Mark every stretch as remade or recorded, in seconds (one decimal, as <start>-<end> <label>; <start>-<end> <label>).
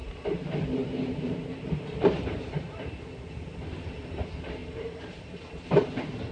0.0-0.8 recorded; 0.8-2.2 remade; 2.2-4.6 recorded; 4.6-5.5 remade; 5.5-6.3 recorded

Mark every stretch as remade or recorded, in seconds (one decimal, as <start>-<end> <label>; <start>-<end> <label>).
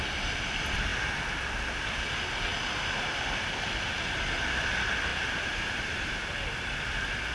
0.0-5.1 recorded; 5.1-6.2 remade; 6.2-7.3 recorded